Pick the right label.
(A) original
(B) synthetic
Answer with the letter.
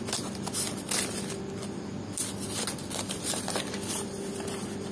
A